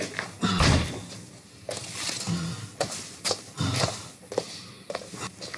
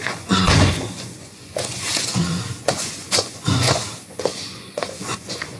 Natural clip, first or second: first